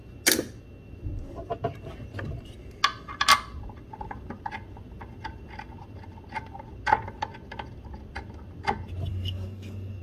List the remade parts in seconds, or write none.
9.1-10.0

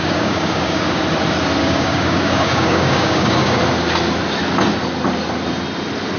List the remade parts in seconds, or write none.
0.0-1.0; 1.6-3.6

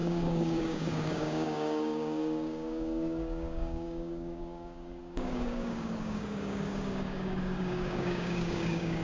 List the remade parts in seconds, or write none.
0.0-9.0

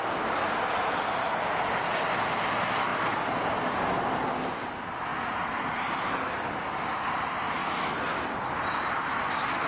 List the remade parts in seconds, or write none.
none

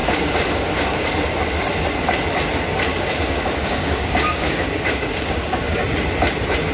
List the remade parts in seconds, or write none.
0.0-1.1; 2.9-5.8